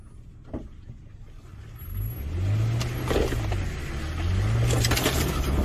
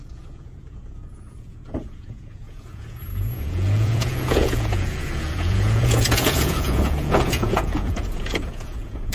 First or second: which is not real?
second